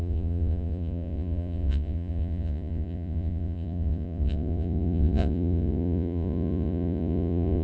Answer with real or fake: fake